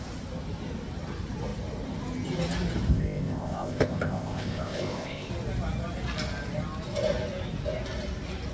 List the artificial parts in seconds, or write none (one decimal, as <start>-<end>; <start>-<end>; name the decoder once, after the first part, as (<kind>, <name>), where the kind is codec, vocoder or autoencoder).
2.9-5.3 (codec, ZipCodec)